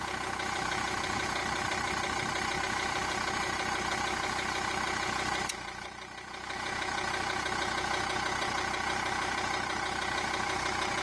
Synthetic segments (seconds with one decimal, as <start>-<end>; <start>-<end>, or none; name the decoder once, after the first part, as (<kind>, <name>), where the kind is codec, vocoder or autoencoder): 0.0-1.4 (vocoder, Vocos); 2.6-11.0

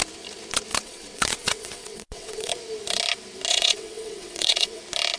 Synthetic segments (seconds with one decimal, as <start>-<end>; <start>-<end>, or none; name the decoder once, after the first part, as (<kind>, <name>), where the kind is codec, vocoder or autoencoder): 0.7-2.5 (vocoder, WaveNeXt); 3.5-4.8